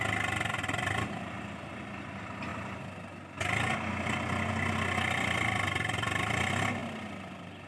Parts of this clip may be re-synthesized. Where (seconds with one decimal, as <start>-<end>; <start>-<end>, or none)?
0.5-1.9